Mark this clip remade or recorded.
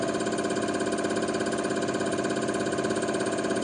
recorded